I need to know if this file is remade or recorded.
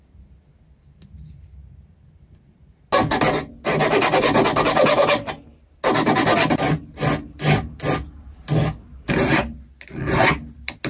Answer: recorded